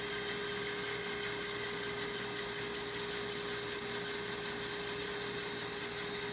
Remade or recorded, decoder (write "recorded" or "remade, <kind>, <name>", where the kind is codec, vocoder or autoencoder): recorded